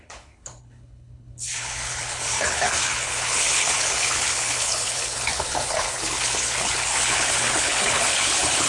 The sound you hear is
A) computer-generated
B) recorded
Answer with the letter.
A